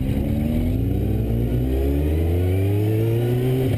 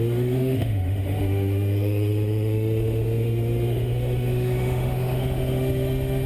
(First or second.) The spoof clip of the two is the second